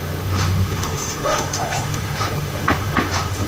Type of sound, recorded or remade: remade